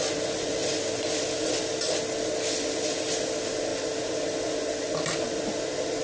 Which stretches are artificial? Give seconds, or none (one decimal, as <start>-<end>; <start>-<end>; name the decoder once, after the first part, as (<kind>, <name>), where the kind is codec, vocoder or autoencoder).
none